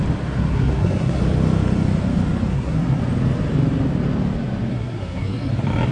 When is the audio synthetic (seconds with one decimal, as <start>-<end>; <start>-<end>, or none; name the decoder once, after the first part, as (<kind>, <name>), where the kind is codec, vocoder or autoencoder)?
0.5-1.2 (codec, SNAC); 2.5-3.0; 4.7-5.5